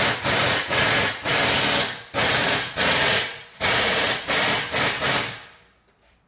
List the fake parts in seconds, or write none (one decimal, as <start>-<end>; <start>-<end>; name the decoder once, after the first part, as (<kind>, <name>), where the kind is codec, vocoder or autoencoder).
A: 0.4-1.3 (vocoder, Vocos); 2.4-4.3